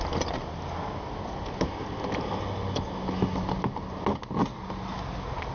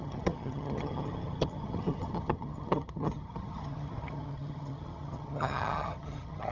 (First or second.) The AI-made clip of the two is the second